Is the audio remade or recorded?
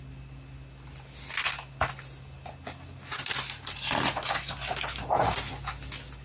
recorded